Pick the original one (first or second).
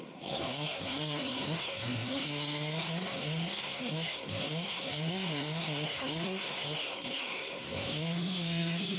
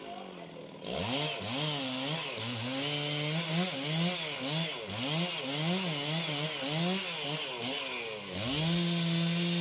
second